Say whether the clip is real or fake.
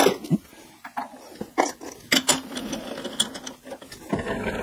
real